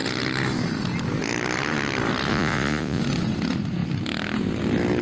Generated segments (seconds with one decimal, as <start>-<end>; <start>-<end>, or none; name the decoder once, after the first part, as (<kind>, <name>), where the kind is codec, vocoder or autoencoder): 2.3-3.0 (vocoder, Vocos)